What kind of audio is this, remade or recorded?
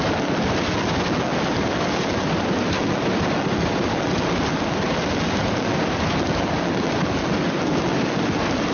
recorded